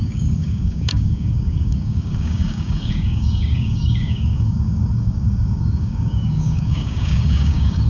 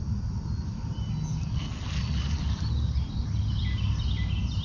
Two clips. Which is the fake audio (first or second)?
first